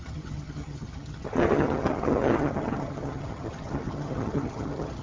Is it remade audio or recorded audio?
remade